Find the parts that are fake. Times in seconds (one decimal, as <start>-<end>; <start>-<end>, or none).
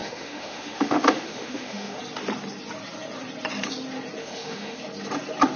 0.0-2.0; 4.2-4.8